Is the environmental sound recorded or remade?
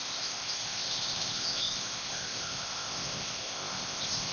remade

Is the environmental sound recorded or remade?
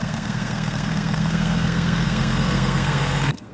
remade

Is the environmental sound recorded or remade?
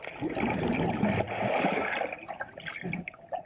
recorded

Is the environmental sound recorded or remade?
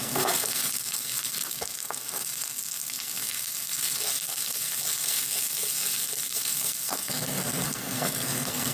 remade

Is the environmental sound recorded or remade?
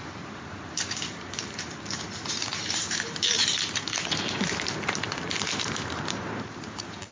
remade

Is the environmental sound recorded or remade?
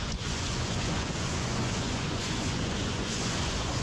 remade